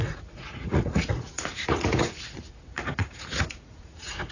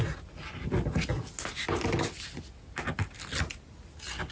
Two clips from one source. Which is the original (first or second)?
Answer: second